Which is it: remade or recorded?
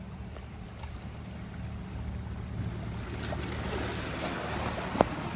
recorded